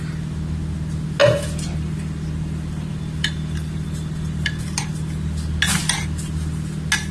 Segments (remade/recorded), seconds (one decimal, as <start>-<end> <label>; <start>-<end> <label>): 0.0-1.2 recorded; 1.2-4.8 remade; 4.8-7.1 recorded